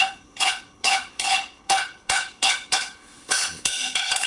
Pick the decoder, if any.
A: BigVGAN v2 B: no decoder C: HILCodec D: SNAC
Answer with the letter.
C